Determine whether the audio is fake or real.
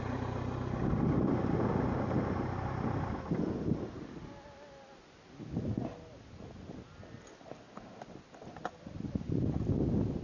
real